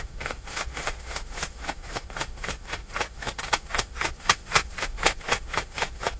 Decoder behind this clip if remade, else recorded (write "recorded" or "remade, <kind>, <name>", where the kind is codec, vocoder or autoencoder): remade, autoencoder, DAC-VAE